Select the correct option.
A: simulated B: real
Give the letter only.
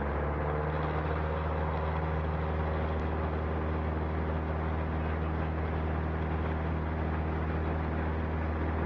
B